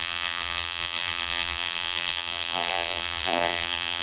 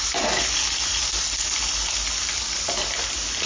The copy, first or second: first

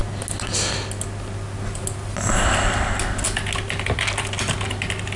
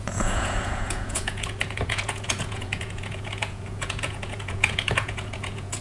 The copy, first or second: second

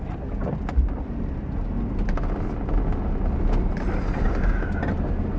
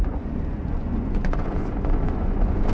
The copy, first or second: second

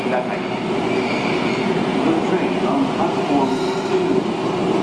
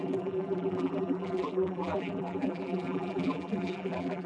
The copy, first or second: second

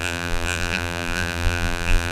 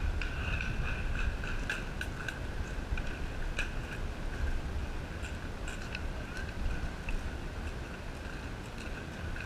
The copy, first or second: first